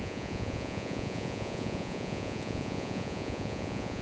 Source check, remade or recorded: remade